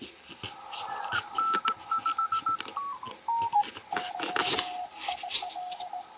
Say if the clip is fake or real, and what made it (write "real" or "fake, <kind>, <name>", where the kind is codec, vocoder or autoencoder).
real